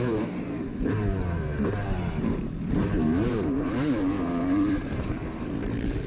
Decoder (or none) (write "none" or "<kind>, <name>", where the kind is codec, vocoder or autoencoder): vocoder, BigVGAN v2